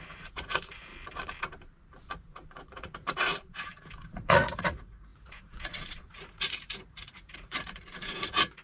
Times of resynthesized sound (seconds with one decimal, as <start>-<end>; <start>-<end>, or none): 0.0-0.9; 2.1-8.6

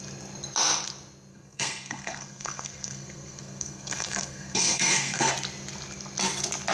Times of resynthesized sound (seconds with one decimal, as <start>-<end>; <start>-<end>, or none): 1.3-5.3

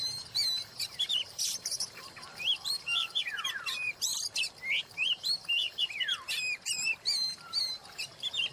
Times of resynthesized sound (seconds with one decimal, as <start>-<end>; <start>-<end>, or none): 0.0-4.1; 4.8-8.5